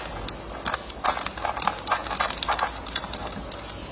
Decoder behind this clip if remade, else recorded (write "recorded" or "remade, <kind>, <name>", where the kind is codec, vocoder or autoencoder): recorded